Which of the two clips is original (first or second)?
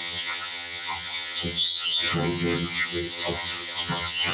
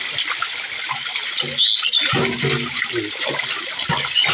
second